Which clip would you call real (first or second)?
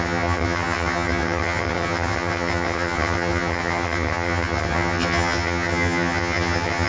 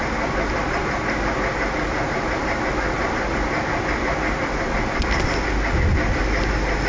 second